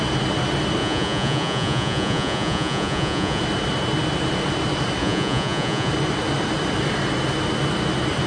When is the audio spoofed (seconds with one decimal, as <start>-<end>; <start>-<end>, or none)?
0.8-3.4; 5.0-5.9